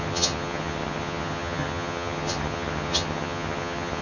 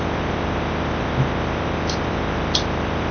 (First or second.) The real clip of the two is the second